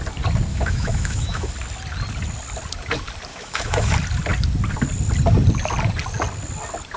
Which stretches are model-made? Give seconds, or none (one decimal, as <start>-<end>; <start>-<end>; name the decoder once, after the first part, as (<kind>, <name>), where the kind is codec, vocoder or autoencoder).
0.5-1.5 (autoencoder, DAC-VAE); 3.3-3.9

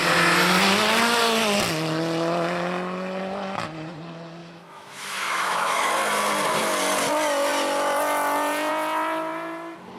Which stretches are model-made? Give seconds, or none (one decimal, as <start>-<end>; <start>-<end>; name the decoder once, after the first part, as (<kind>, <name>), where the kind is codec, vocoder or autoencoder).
4.4-5.9 (autoencoder, DAC-VAE)

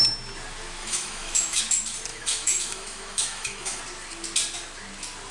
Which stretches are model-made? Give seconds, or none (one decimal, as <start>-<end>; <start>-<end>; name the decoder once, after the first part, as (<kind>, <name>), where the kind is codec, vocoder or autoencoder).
0.8-1.6 (autoencoder, DAC-VAE); 2.1-3.8

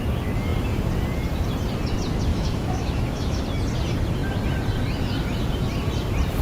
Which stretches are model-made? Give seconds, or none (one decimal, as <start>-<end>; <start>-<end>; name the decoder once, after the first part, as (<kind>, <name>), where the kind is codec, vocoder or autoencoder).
2.3-3.4 (autoencoder, DAC-VAE)

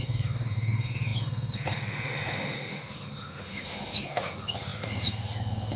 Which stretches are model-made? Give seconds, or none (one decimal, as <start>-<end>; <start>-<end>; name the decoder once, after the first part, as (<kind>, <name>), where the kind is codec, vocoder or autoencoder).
0.0-5.8 (autoencoder, DAC-VAE)